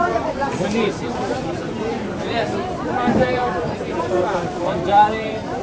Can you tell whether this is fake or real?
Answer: fake